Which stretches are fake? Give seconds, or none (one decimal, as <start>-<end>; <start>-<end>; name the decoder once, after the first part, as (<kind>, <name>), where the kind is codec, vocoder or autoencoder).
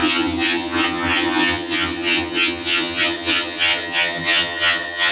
0.0-5.1 (vocoder, HiFi-GAN)